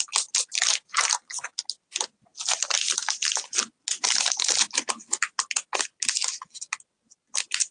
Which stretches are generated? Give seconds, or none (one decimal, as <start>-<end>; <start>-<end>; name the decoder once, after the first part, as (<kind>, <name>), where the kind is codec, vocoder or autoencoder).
none